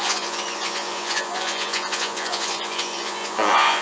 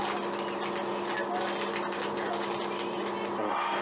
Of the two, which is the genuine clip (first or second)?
second